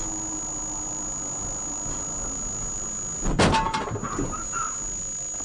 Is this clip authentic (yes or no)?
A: yes